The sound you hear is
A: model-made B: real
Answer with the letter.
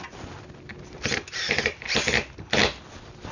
B